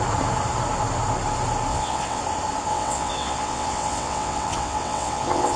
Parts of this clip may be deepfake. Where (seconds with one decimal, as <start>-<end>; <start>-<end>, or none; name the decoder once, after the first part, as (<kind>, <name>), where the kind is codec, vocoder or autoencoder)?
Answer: 1.7-2.2 (vocoder, WaveNeXt); 2.7-5.6